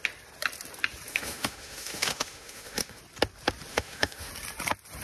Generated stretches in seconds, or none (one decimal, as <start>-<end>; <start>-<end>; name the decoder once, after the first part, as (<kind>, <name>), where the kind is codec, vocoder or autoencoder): 1.1-3.0 (autoencoder, DAC-VAE); 3.7-4.3